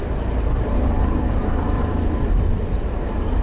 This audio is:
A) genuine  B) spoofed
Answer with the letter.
B